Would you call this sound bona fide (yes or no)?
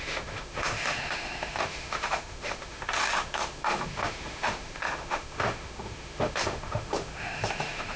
no